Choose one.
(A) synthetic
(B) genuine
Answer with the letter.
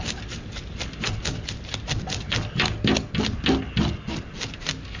B